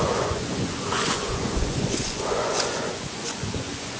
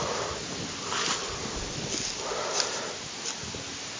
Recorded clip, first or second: second